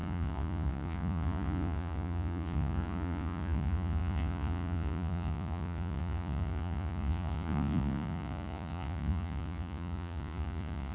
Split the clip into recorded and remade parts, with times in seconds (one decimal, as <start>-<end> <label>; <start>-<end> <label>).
0.0-10.9 remade